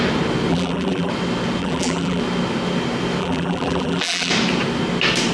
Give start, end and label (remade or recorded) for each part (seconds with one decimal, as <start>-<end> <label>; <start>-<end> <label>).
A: 0.0-0.5 recorded; 0.5-1.1 remade; 1.1-1.6 recorded; 1.6-2.2 remade; 2.2-3.2 recorded; 3.2-4.3 remade; 4.3-5.3 recorded